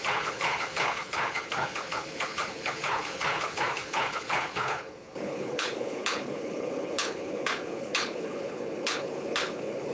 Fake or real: fake